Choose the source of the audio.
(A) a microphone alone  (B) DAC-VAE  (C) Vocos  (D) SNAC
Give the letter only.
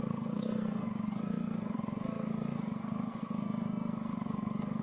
D